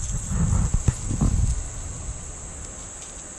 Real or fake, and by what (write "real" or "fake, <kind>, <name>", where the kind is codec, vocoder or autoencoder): real